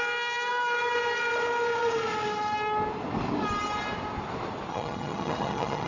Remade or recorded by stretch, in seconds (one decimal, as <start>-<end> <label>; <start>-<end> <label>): 0.0-4.7 recorded; 4.7-5.9 remade